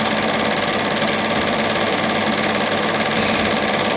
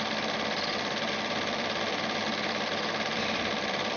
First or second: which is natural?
first